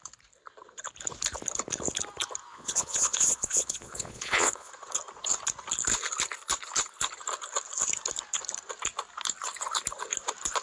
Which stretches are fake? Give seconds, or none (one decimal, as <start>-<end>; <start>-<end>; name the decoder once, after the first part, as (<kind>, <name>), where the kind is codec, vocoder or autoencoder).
2.5-4.7 (vocoder, Vocos)